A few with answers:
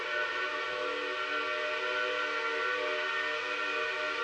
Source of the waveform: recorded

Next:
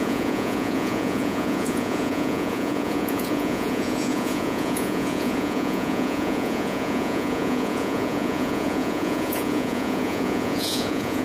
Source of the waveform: remade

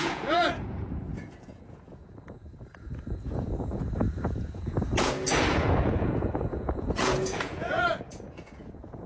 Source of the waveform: remade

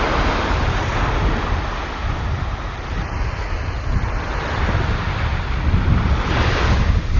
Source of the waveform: recorded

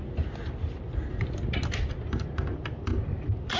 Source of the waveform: recorded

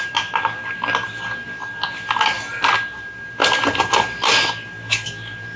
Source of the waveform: recorded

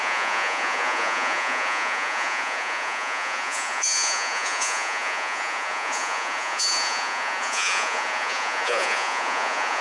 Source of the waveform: remade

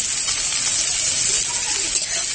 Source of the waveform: recorded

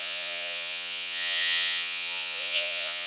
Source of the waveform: remade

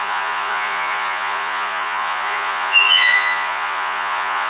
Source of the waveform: remade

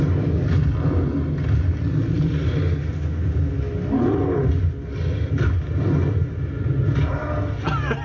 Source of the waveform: recorded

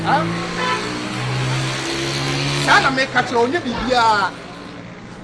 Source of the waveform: recorded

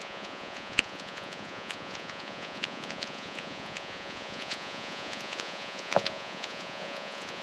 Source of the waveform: remade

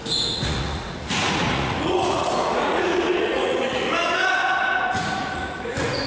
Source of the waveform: remade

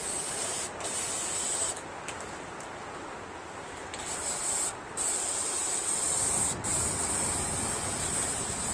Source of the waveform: recorded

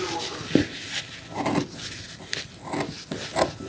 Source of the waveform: recorded